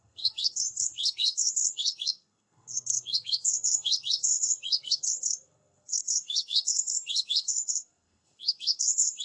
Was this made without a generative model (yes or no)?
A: no